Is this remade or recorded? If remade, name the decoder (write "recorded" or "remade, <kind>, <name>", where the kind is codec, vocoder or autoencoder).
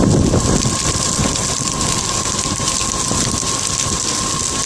recorded